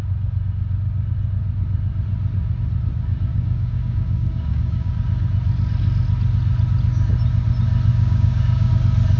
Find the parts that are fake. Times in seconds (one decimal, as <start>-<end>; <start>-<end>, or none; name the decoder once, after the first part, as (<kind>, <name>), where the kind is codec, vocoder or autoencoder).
3.3-4.9 (codec, DAC); 7.9-8.7

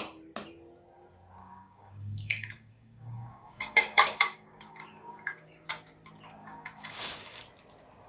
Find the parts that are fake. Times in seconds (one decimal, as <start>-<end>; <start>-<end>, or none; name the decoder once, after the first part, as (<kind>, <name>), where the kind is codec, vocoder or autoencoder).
1.4-5.7 (codec, DAC); 6.4-7.4